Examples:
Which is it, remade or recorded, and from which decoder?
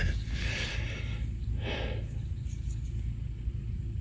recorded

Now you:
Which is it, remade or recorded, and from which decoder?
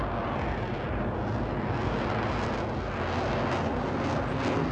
recorded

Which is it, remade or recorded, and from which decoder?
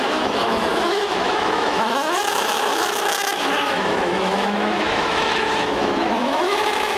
remade, autoencoder, DAC-VAE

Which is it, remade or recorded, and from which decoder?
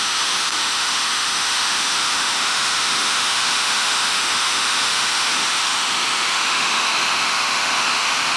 remade, autoencoder, DAC-VAE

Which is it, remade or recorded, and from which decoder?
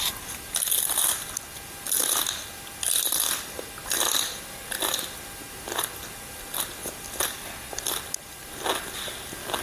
recorded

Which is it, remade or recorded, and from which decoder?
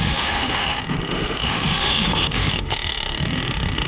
remade, autoencoder, DAC-VAE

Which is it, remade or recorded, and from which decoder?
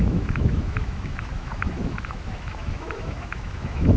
remade, autoencoder, DAC-VAE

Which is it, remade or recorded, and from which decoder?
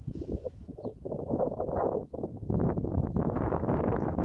remade, autoencoder, DAC-VAE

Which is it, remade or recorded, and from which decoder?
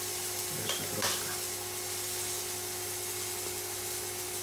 recorded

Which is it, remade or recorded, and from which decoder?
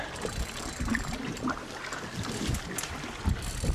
recorded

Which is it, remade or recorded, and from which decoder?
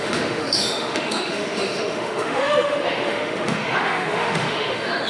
remade, autoencoder, DAC-VAE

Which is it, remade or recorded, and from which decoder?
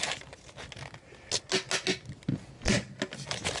recorded